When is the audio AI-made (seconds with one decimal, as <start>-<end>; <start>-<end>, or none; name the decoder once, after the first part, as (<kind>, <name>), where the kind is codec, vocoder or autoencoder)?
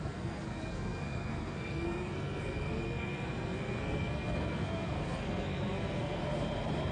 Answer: 0.0-6.2 (codec, SNAC)